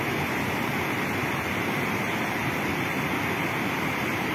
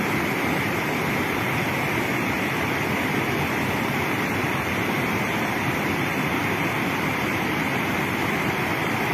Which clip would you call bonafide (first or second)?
first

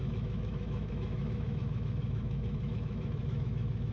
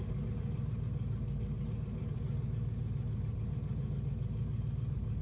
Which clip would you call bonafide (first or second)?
second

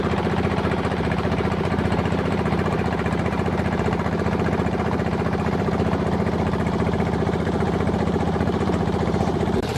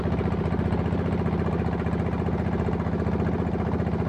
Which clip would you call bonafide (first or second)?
second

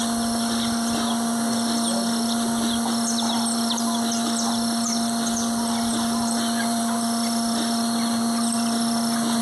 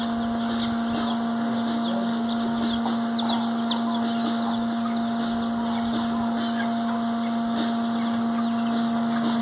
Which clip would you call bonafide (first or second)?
second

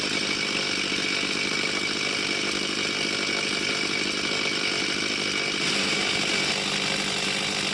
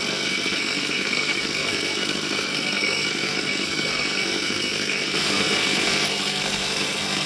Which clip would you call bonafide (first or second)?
first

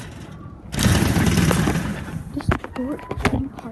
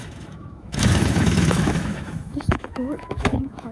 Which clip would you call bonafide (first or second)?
first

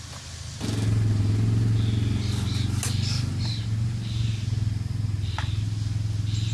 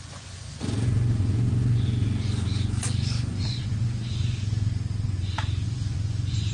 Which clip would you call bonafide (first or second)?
first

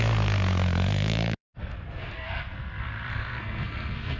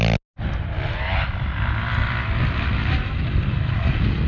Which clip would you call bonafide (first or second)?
second